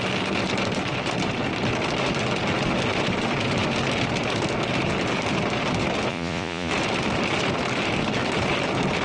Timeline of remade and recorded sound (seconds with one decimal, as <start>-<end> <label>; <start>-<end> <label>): 0.0-6.1 recorded; 6.1-6.7 remade; 6.7-9.0 recorded